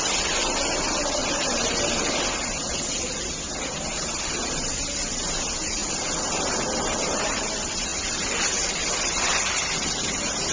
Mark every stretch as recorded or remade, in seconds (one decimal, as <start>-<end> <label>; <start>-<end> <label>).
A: 0.0-10.5 recorded